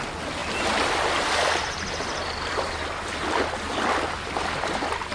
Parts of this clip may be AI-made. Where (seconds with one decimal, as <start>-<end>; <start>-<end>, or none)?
none